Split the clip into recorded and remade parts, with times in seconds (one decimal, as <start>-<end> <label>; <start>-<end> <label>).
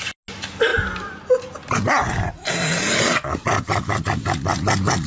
0.0-5.1 recorded